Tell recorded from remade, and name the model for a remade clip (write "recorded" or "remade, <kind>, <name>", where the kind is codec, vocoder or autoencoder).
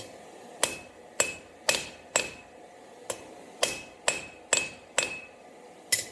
recorded